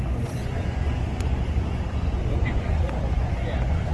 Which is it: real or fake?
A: fake